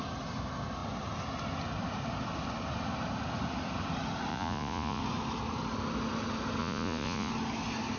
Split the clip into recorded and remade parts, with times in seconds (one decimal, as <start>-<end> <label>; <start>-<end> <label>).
0.0-4.3 recorded; 4.3-5.0 remade; 5.0-6.6 recorded; 6.6-7.3 remade; 7.3-8.0 recorded